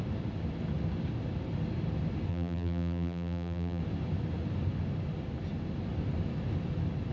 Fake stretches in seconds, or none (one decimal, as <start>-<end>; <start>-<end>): 2.3-3.8